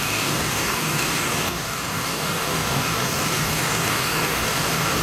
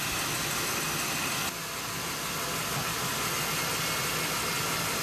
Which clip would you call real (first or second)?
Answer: second